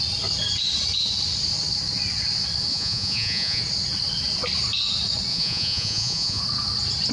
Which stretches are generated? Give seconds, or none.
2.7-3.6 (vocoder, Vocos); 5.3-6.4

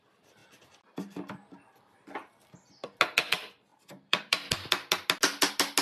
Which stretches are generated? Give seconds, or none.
3.7-4.5 (vocoder, BigVGAN v2)

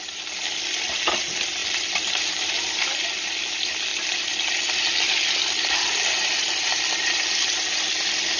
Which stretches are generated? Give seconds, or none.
none

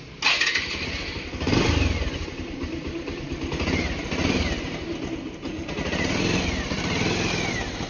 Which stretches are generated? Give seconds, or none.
none